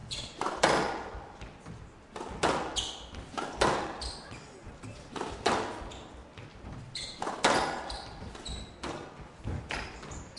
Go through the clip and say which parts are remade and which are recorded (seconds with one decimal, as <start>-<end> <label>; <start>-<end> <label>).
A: 0.0-10.4 recorded